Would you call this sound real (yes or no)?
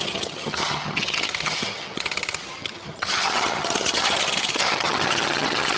no